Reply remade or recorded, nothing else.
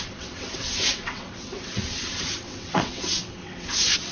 remade